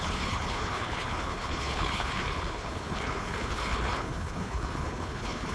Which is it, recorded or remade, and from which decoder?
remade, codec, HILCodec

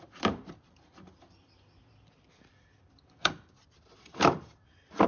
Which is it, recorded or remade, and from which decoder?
remade, vocoder, BigVGAN v2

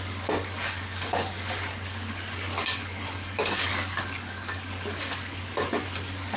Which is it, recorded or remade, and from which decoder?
remade, codec, DAC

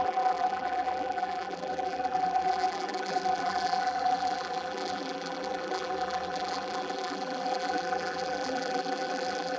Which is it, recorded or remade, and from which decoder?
remade, vocoder, BigVGAN v2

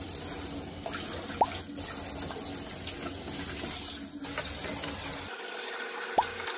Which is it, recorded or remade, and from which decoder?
recorded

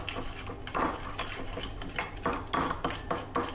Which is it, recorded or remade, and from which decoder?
recorded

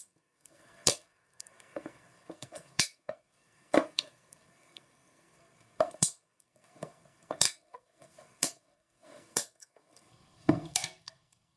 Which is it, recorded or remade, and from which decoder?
remade, codec, SNAC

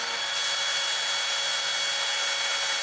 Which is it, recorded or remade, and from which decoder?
recorded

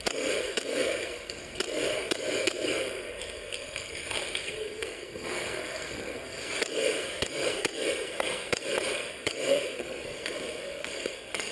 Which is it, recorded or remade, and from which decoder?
remade, codec, SNAC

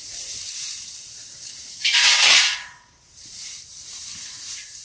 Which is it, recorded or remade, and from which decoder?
remade, vocoder, BigVGAN v2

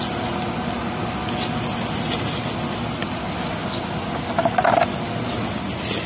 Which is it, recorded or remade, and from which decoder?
recorded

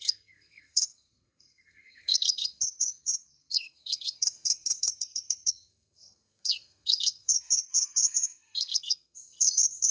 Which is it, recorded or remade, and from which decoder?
remade, codec, SNAC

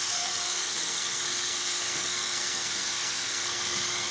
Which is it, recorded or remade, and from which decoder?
remade, codec, SNAC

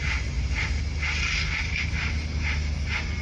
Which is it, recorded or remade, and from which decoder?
recorded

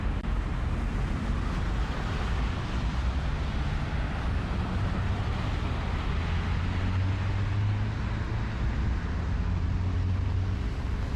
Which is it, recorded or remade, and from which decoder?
recorded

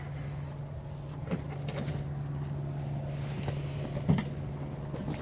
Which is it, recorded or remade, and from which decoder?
recorded